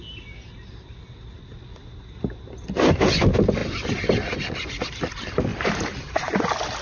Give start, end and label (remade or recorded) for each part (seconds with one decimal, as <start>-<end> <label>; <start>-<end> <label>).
0.0-5.5 recorded; 5.5-6.3 remade; 6.3-6.8 recorded

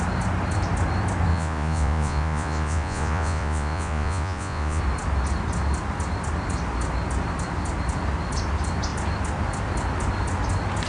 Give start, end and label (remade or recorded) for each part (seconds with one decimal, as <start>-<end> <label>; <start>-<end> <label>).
0.0-1.3 recorded; 1.3-4.8 remade; 4.8-10.9 recorded

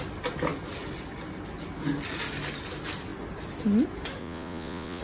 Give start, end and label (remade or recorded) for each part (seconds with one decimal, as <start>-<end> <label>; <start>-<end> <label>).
0.0-4.2 recorded; 4.2-5.0 remade